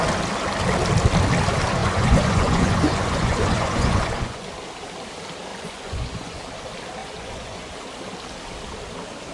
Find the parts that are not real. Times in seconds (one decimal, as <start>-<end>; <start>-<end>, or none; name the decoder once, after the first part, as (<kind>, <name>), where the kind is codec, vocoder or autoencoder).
1.8-4.5 (vocoder, Vocos); 5.5-6.4; 7.0-7.7